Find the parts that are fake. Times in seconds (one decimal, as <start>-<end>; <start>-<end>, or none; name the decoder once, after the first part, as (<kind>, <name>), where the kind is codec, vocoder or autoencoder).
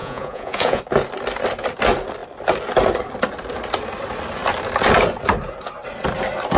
0.0-0.8 (vocoder, Vocos)